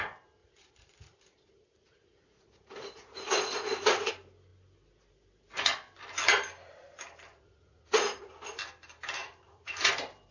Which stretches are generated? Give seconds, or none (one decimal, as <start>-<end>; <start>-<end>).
0.4-4.1; 7.3-8.3; 9.2-9.9